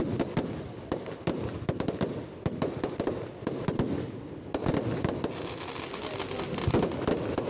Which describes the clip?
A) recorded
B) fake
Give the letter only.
A